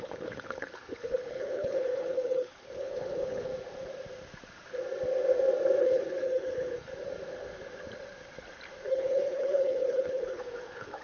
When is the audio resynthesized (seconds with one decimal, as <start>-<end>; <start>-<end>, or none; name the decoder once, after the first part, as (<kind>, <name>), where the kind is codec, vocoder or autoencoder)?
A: 0.0-3.5 (codec, HILCodec); 5.8-6.9; 8.9-11.0